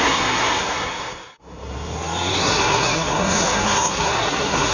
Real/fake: fake